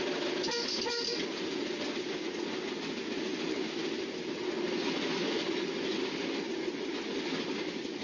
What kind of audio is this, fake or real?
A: real